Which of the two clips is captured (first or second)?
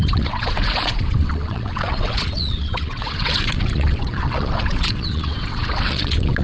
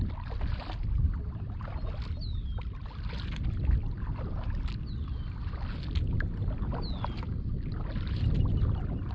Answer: second